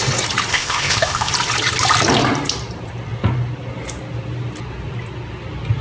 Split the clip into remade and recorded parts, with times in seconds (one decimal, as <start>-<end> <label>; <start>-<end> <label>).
0.0-0.5 recorded; 0.5-1.3 remade; 1.3-5.8 recorded